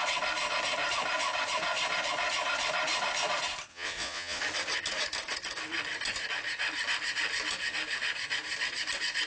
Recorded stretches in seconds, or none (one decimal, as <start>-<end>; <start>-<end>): 0.0-3.7; 4.4-9.3